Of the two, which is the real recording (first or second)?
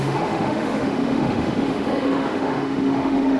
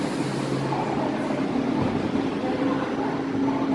second